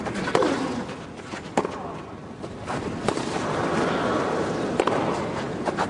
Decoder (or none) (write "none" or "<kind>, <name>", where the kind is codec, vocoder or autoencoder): none